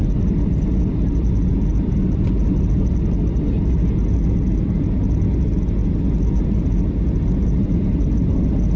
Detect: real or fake real